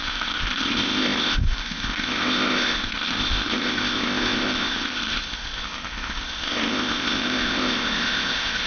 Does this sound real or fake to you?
fake